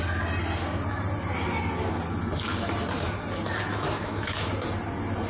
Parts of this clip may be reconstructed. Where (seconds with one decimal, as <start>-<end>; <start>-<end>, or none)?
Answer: 3.7-4.5